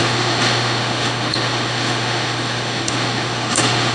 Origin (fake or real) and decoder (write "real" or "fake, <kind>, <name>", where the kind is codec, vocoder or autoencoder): fake, autoencoder, DAC-VAE